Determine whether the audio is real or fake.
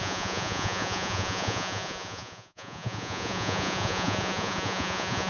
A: fake